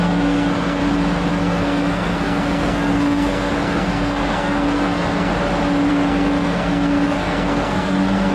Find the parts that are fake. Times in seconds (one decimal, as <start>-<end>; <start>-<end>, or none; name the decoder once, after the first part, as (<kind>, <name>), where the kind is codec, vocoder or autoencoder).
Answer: 0.0-0.8 (codec, SNAC); 1.3-5.3; 5.9-8.3